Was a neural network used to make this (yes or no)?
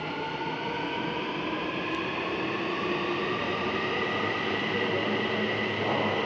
no